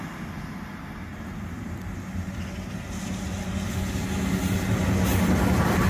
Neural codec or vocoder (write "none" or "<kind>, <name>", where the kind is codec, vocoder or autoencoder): none